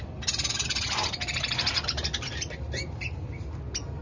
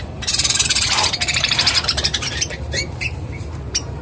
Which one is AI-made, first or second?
second